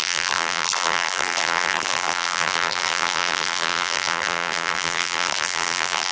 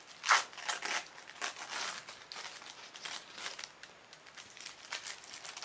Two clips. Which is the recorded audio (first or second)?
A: second